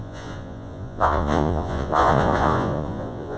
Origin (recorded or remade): remade